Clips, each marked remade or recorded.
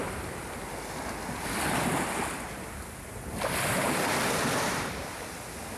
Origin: recorded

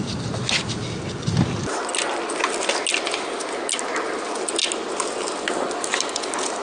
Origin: recorded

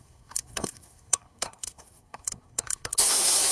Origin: remade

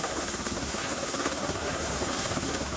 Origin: remade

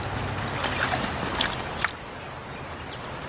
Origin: recorded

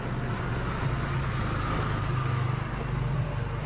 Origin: recorded